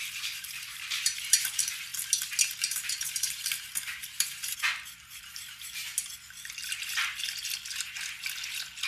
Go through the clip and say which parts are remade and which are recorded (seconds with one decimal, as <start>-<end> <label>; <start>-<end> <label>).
0.0-1.9 remade; 1.9-2.6 recorded; 2.6-5.8 remade; 5.8-8.9 recorded